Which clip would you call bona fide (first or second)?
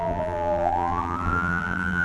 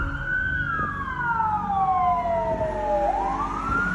second